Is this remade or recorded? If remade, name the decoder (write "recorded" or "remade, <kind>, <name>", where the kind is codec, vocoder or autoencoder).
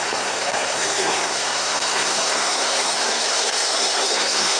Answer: remade, codec, SNAC